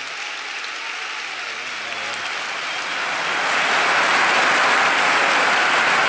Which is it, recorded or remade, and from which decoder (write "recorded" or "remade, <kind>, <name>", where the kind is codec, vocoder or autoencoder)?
recorded